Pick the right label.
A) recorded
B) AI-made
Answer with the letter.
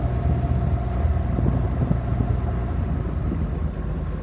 A